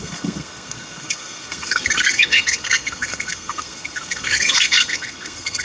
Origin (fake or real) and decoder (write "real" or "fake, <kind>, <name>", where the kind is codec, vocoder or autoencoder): fake, codec, SNAC